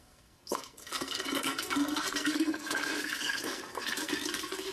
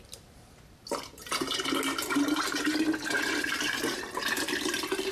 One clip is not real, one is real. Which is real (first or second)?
second